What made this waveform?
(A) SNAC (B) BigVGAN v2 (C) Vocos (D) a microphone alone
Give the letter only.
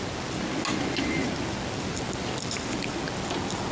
D